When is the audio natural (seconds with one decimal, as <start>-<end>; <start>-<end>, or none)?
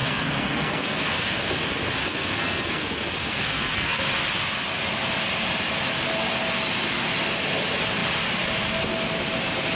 1.6-2.0; 4.0-9.8